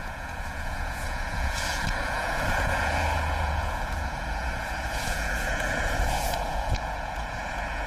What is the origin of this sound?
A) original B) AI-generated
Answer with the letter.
B